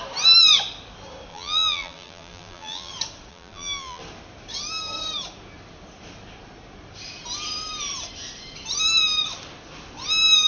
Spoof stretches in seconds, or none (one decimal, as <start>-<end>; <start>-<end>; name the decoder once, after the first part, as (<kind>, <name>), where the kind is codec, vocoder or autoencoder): 1.3-2.9 (vocoder, BigVGAN v2); 3.3-4.0